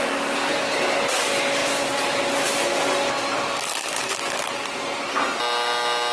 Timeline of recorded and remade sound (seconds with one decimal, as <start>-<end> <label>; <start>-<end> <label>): 0.0-6.1 recorded